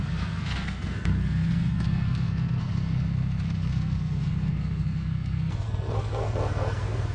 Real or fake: fake